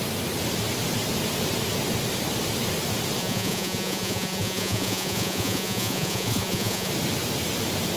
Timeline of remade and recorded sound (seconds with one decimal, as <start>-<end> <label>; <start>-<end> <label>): 0.0-3.2 recorded; 3.2-6.9 remade; 6.9-8.0 recorded